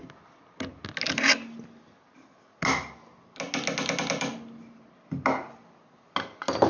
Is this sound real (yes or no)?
yes